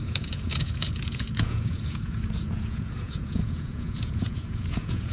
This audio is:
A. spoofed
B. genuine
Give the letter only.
A